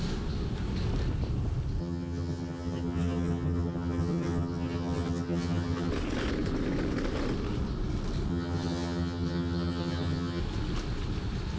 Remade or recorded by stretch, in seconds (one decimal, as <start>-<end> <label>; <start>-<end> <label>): 0.0-1.8 recorded; 1.8-5.9 remade; 5.9-8.3 recorded; 8.3-10.4 remade; 10.4-11.6 recorded